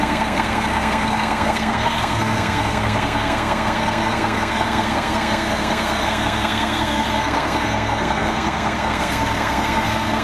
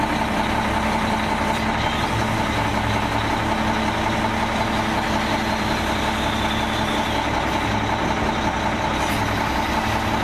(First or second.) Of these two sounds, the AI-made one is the first